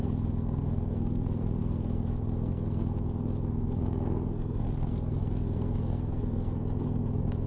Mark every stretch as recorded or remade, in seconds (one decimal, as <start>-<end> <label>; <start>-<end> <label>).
0.0-7.5 remade